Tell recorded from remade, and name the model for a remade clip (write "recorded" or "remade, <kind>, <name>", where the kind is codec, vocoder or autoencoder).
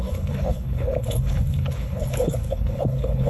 remade, codec, HILCodec